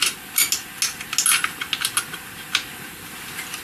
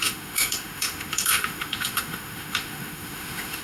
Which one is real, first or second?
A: first